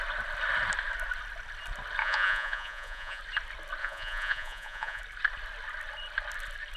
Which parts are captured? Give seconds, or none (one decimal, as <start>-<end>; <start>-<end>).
0.0-2.0; 3.2-3.8; 5.0-6.8